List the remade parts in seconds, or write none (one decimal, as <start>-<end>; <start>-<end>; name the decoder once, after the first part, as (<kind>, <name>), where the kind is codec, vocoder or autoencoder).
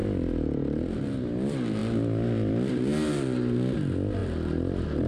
none